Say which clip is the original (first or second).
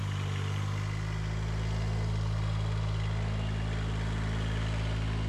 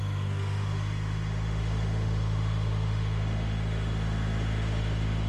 first